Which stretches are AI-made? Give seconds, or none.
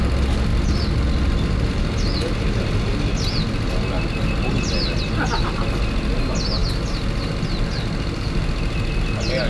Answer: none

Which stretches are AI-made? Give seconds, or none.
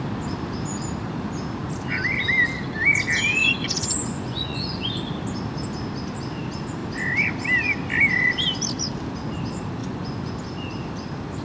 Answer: 3.4-4.9 (vocoder, Vocos); 9.8-10.3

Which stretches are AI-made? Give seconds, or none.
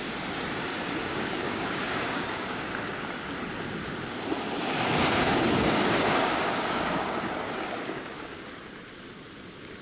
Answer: 0.7-3.0 (codec, DAC); 5.0-8.5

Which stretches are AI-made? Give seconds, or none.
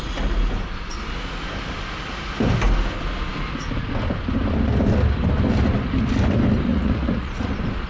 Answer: 6.7-7.5 (vocoder, Vocos)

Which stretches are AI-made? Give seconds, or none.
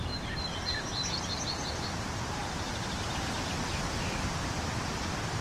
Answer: none